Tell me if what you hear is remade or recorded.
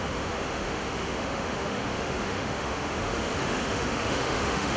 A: remade